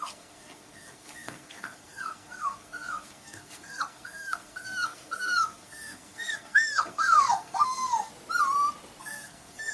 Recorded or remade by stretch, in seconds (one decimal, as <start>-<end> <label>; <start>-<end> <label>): 0.0-8.1 remade; 8.1-9.0 recorded; 9.0-9.7 remade